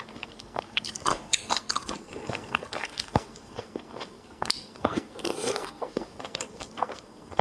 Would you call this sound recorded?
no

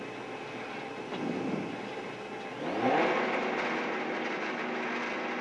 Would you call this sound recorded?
yes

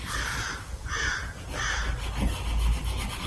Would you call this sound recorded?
yes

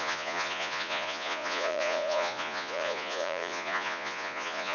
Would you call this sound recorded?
no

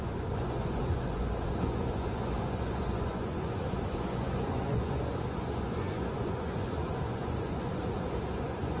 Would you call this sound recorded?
no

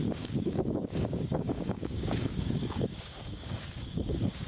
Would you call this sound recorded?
no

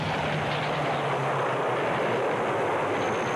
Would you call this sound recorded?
yes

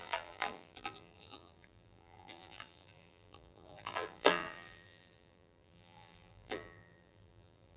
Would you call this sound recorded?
no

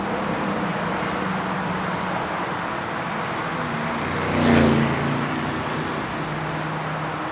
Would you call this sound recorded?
yes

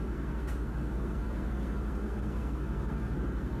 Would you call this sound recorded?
no